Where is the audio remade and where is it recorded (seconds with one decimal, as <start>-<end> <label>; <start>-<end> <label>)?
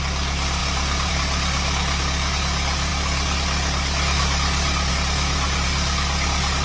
0.0-0.6 recorded; 0.6-1.1 remade; 1.1-6.6 recorded